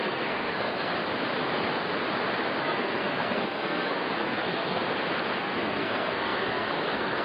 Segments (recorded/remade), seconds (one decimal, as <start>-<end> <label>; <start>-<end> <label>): 0.0-0.9 remade; 0.9-2.6 recorded; 2.6-4.8 remade; 4.8-5.4 recorded; 5.4-7.2 remade